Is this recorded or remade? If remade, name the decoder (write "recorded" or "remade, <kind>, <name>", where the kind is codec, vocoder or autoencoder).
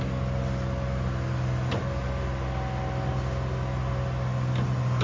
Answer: recorded